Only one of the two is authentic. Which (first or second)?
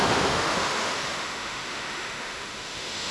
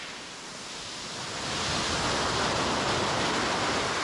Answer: second